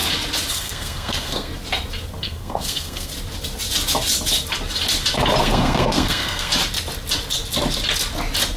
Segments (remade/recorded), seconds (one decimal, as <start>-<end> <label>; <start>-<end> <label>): 0.0-0.5 recorded; 0.5-1.5 remade; 1.5-2.2 recorded; 2.2-3.1 remade; 3.1-5.4 recorded; 5.4-6.5 remade; 6.5-8.6 recorded